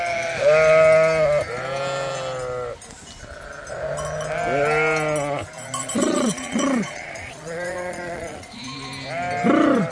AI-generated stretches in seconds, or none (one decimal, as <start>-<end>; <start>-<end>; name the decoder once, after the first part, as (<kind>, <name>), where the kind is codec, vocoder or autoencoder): 6.0-8.6 (vocoder, Vocos)